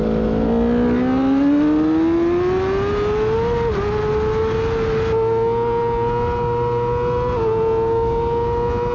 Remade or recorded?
recorded